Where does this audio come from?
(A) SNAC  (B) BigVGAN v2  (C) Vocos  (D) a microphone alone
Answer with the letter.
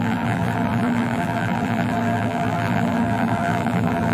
B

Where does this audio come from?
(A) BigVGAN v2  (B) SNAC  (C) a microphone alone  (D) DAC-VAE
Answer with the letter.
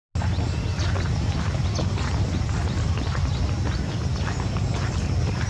C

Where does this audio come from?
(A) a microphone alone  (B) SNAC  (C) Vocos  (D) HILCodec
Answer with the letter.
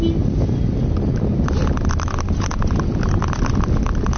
A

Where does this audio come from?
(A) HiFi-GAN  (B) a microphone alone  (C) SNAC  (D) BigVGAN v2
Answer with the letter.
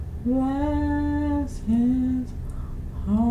B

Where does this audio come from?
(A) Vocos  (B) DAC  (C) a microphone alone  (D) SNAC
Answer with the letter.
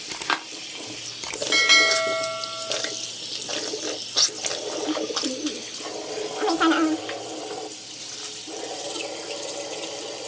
C